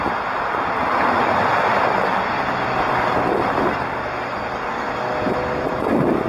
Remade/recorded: recorded